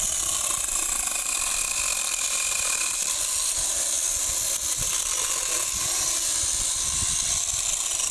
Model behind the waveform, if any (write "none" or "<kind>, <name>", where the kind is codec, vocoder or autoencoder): none